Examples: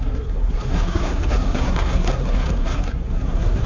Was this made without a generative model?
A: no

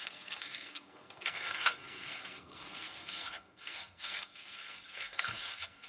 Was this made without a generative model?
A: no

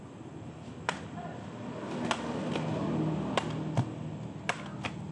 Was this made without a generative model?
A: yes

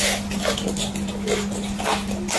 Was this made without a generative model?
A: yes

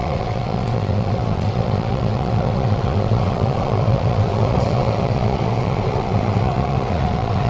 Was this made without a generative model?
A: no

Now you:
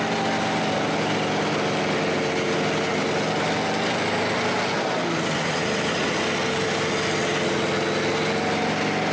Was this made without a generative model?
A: yes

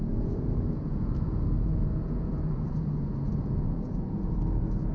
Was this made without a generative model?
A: no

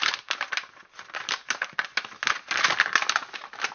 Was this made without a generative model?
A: yes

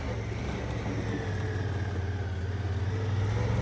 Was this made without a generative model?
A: yes